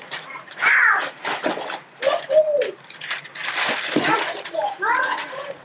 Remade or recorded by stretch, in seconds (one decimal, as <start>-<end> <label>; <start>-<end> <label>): 0.0-0.6 remade; 0.6-4.0 recorded; 4.0-5.6 remade